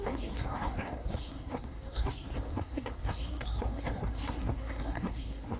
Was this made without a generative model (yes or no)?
no